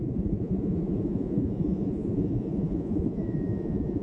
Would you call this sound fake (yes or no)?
yes